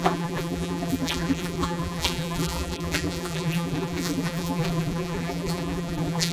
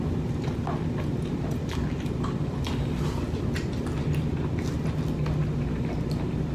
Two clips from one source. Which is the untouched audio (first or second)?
second